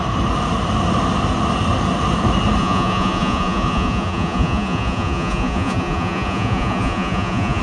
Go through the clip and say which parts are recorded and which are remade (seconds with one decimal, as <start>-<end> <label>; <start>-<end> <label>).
0.0-2.6 recorded; 2.6-7.6 remade